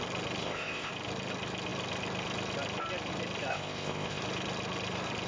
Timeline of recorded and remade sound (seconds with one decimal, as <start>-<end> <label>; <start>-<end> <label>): 0.0-0.4 recorded; 0.4-0.9 remade; 0.9-3.5 recorded; 3.5-4.2 remade; 4.2-5.3 recorded